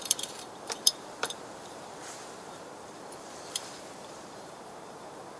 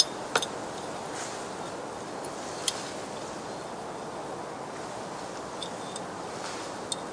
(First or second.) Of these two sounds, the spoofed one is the first